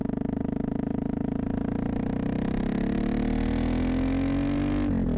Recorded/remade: recorded